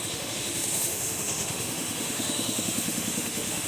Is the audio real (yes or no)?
no